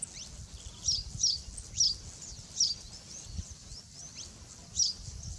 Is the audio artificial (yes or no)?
no